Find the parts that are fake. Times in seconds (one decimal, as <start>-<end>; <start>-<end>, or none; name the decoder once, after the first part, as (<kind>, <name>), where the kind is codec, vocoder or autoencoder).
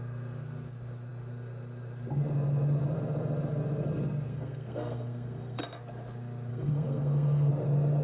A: 4.3-5.6 (codec, SNAC); 6.5-7.5